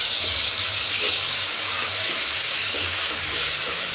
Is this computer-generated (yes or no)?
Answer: yes